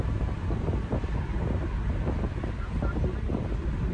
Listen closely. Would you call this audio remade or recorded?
remade